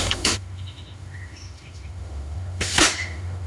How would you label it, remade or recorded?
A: remade